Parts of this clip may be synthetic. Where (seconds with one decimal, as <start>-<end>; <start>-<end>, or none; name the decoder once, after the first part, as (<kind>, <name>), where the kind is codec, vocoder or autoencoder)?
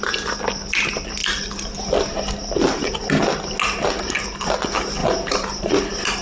5.0-5.7 (vocoder, BigVGAN v2)